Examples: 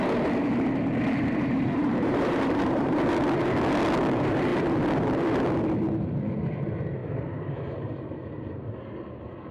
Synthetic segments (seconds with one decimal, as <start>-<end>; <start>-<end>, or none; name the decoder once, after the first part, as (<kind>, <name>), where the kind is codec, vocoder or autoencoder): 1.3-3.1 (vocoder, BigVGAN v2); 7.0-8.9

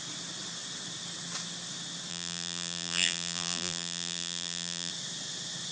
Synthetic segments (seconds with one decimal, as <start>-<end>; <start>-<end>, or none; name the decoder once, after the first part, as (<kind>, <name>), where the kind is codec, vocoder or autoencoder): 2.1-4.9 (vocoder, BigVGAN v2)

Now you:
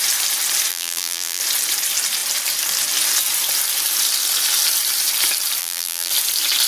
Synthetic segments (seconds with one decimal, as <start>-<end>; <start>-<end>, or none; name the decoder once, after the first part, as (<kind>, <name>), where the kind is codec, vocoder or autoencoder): 0.7-1.4 (vocoder, BigVGAN v2); 5.6-6.1